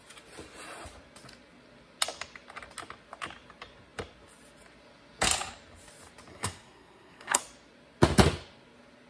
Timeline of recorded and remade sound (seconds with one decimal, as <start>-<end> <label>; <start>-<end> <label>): 0.0-6.3 recorded; 6.3-7.4 remade; 7.4-9.1 recorded